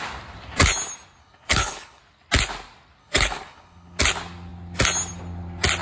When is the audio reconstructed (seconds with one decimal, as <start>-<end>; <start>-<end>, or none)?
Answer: 1.2-2.0; 3.0-4.0